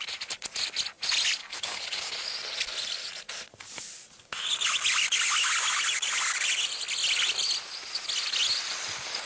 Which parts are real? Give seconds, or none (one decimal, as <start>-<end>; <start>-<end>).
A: 0.0-1.4; 2.1-9.3

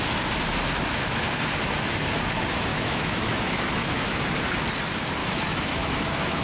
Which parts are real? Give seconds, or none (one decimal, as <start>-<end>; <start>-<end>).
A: 0.0-2.7; 4.2-5.2